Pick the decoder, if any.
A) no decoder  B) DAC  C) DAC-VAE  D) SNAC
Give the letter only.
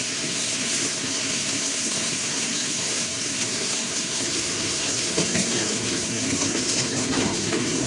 D